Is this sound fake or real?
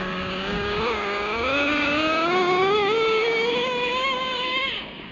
fake